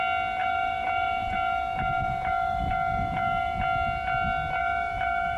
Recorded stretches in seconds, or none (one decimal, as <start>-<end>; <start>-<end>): 0.0-0.4; 3.6-4.6